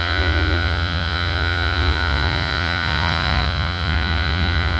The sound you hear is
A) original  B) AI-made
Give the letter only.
B